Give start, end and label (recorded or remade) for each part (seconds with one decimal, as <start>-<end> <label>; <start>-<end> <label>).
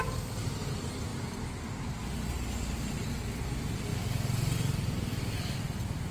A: 0.0-6.1 recorded